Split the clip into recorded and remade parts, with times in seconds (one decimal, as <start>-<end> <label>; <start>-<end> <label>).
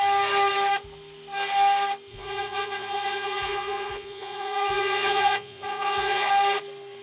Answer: 0.0-2.1 recorded; 2.1-6.3 remade; 6.3-7.0 recorded